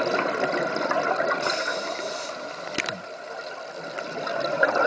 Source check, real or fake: real